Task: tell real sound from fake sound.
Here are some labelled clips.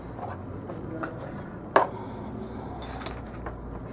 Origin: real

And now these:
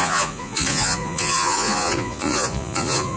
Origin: fake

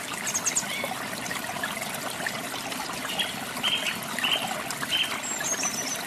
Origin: real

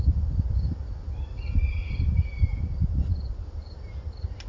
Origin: real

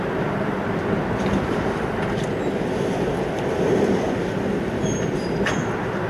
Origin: real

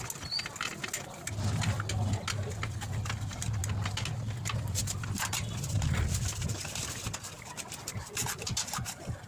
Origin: real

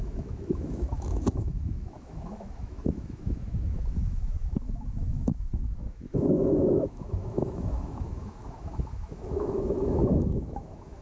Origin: fake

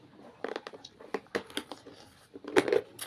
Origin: real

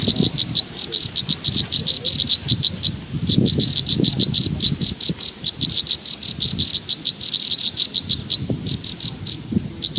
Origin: fake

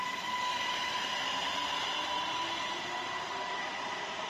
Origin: fake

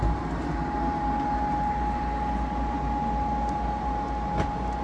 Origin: real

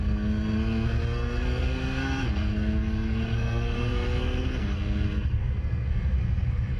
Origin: fake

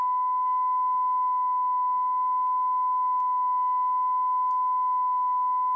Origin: real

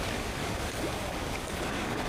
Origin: fake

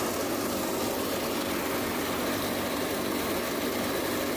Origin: real